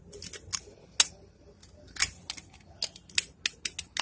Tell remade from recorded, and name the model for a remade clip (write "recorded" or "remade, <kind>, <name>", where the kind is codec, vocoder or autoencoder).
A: recorded